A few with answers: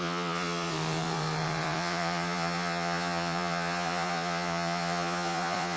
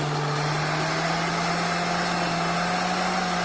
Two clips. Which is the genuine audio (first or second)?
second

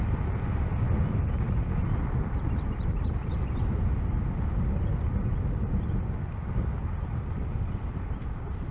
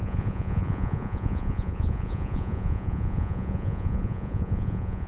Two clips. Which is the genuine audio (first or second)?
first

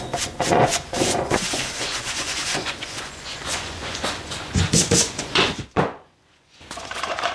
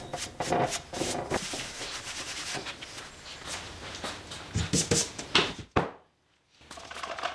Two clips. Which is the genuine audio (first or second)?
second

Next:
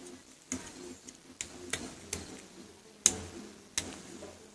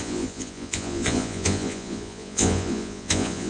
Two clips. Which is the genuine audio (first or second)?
first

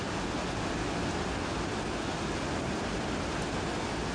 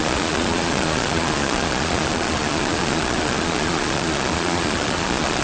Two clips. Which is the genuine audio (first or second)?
first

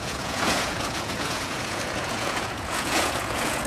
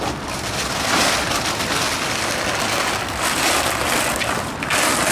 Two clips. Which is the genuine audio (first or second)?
second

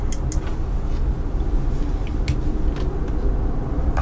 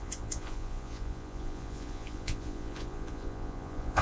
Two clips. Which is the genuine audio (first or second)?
first